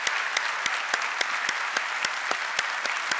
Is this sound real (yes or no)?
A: yes